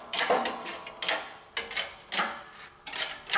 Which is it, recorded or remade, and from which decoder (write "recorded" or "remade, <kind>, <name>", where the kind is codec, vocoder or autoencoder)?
recorded